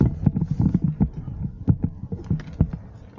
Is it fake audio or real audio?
real